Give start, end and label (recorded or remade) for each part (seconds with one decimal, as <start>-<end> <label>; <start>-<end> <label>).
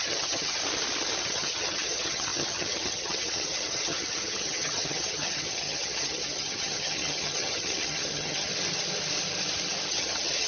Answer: 0.0-0.6 remade; 0.6-1.2 recorded; 1.2-8.5 remade; 8.5-9.9 recorded; 9.9-10.5 remade